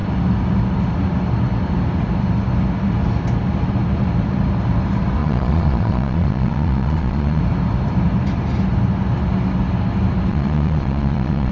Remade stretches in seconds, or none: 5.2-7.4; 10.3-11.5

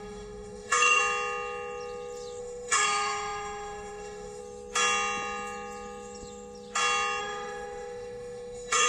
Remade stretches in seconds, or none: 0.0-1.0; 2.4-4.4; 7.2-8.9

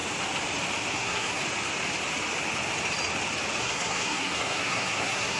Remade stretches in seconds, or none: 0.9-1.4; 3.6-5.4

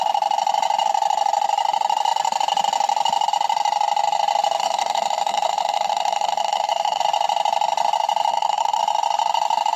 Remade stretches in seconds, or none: 4.6-7.0; 8.3-8.8

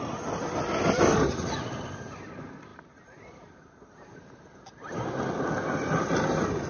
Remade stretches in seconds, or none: none